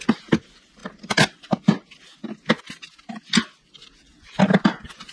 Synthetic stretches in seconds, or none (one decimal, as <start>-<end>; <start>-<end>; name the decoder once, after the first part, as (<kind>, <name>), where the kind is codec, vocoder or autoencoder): none

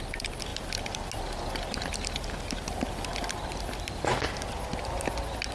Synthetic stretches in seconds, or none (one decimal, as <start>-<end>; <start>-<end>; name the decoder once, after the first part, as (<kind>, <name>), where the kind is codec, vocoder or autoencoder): none